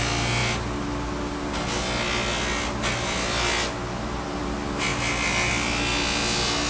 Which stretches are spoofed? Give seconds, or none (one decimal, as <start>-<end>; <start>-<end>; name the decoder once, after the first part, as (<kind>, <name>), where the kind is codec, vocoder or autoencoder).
none